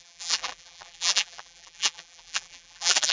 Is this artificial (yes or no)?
yes